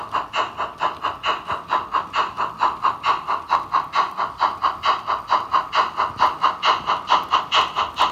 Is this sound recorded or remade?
recorded